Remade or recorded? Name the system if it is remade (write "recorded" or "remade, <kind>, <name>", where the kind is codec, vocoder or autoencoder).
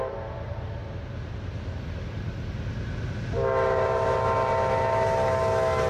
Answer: recorded